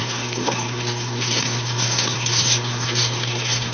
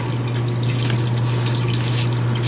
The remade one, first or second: first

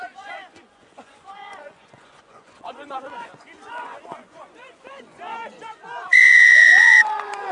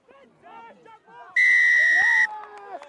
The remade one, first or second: first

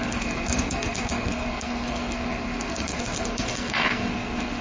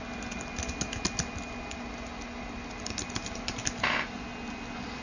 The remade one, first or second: first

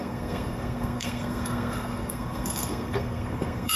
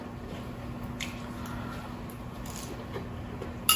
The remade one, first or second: first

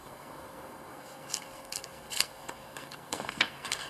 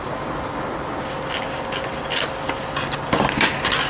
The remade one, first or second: first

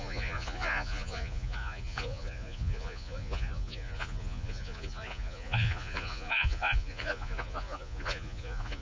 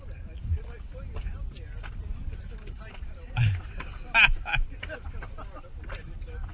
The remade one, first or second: first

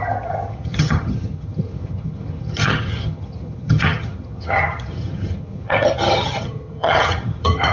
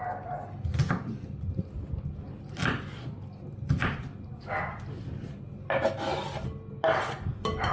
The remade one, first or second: first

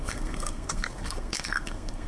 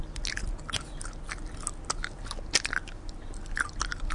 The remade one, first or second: first